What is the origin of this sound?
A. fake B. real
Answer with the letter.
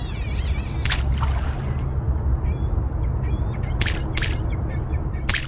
B